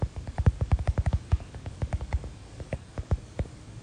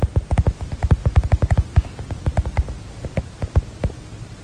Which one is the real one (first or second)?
second